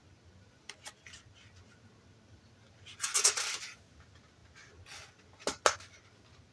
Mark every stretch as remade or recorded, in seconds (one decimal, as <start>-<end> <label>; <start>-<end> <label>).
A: 0.0-6.5 recorded